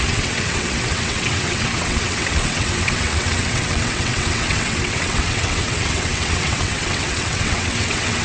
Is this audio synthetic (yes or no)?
yes